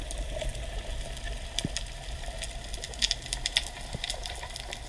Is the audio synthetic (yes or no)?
yes